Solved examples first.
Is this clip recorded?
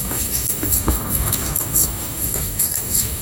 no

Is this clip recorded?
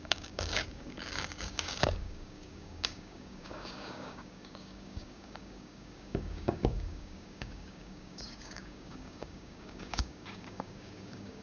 no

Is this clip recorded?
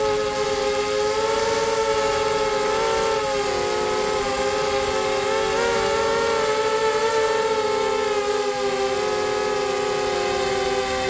yes